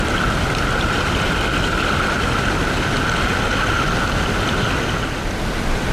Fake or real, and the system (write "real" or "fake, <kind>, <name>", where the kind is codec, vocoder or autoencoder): real